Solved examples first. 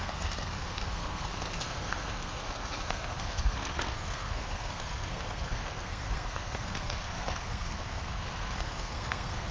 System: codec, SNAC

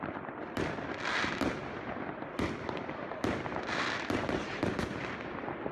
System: vocoder, BigVGAN v2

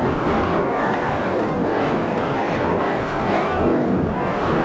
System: codec, DAC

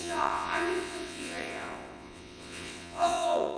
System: vocoder, WaveNeXt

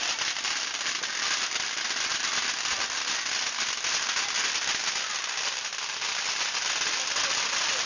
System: none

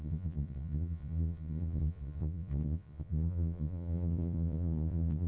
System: vocoder, Vocos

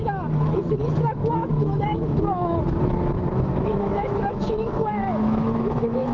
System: autoencoder, DAC-VAE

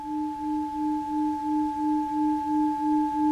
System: none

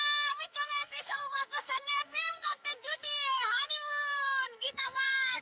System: codec, SNAC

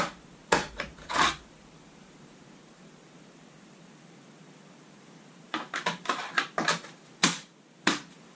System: vocoder, BigVGAN v2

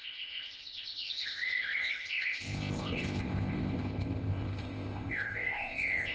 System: codec, ZipCodec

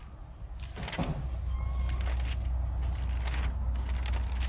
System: none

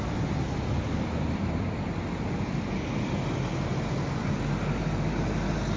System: none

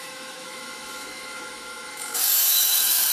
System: autoencoder, DAC-VAE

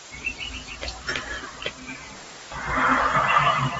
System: vocoder, BigVGAN v2